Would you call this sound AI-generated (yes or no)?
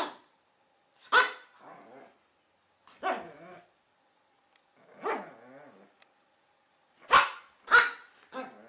no